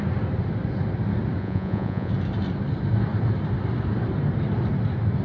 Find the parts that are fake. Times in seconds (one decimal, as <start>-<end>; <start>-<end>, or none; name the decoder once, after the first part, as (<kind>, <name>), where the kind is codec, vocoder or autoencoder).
1.4-2.1 (vocoder, Vocos)